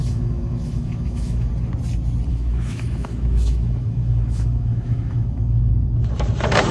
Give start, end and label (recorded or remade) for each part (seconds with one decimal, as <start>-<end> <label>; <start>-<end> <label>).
0.0-1.5 remade; 1.5-2.3 recorded; 2.3-5.7 remade; 5.7-6.7 recorded